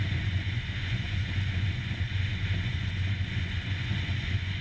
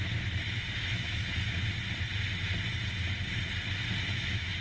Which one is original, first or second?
second